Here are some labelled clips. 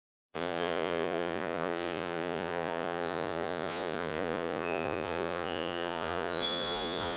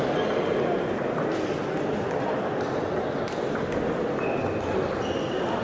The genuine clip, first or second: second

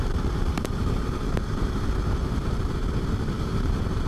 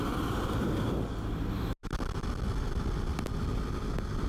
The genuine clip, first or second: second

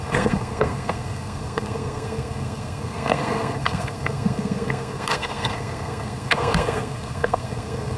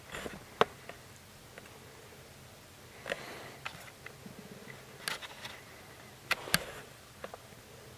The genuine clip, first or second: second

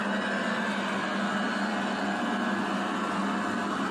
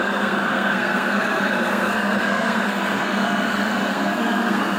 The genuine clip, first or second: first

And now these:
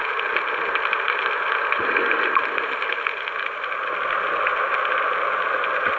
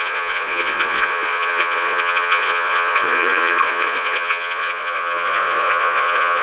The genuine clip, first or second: first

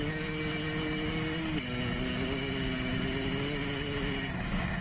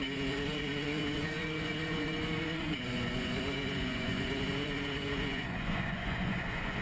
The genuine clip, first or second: first